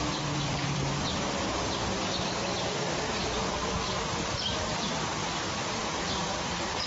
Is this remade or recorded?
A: remade